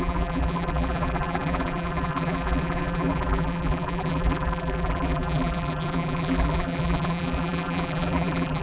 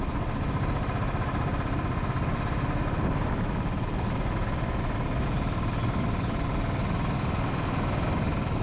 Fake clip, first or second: first